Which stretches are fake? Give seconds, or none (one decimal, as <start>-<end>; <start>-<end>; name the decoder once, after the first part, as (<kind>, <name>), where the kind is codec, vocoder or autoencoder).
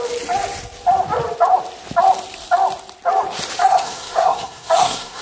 3.6-5.2 (codec, SNAC)